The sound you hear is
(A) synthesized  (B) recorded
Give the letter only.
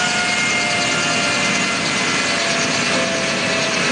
B